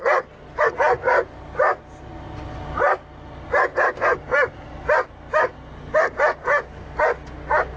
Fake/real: real